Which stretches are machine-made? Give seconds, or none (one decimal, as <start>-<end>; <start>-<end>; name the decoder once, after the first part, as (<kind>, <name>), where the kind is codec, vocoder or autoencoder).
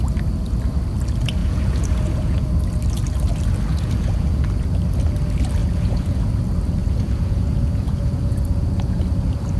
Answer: 1.4-2.5 (vocoder, Vocos); 3.7-4.4; 5.6-6.3; 6.8-8.9